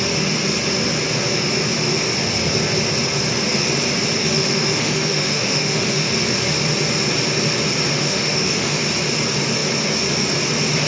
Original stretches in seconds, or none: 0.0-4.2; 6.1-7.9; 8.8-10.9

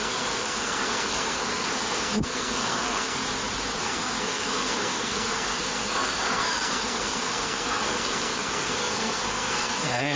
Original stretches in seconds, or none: 3.2-3.8

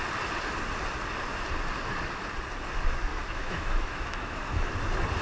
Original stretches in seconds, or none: 0.0-3.1; 4.8-5.2

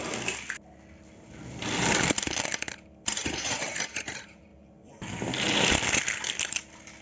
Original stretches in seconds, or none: 0.0-7.0

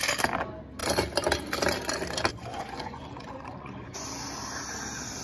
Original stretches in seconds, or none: 0.0-2.3; 4.2-5.2

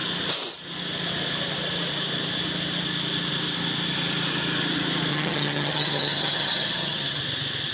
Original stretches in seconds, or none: 0.0-5.1; 7.2-7.7

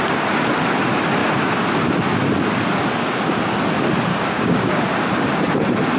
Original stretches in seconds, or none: 0.0-4.1; 4.8-6.0

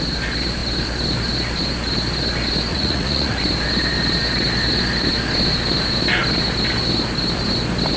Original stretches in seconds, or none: 0.0-2.7; 3.4-8.0